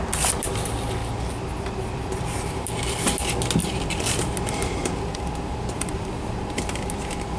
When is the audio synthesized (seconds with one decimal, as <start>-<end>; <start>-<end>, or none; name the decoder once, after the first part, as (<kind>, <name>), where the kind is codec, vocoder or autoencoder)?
1.0-2.8 (vocoder, BigVGAN v2); 3.6-6.2